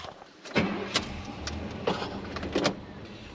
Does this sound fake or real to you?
real